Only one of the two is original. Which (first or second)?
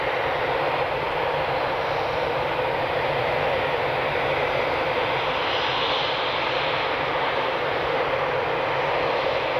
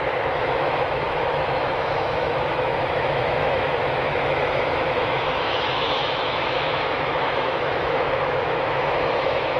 first